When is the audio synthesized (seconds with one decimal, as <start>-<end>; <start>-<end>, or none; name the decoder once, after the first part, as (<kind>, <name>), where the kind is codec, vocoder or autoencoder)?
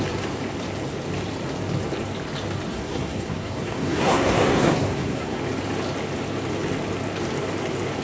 2.7-5.4 (codec, SNAC)